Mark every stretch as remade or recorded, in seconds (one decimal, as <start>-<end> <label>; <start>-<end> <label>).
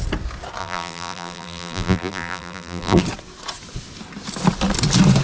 0.0-0.6 recorded; 0.6-3.0 remade; 3.0-5.2 recorded